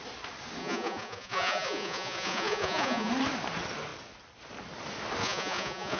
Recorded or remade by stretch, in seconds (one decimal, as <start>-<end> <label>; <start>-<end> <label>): 0.0-0.6 recorded; 0.6-3.1 remade; 3.1-5.2 recorded; 5.2-6.0 remade